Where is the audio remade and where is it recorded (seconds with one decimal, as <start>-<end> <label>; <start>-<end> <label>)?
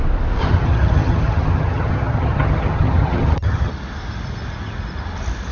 0.0-0.4 recorded; 0.4-3.7 remade; 3.7-5.5 recorded